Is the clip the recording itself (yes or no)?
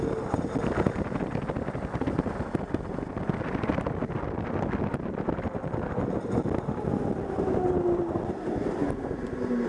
yes